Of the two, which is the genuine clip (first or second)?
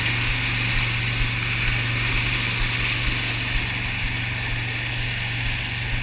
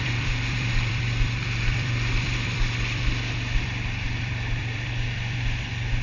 first